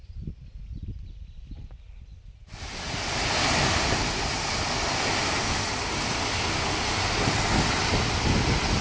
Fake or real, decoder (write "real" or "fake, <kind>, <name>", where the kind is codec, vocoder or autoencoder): real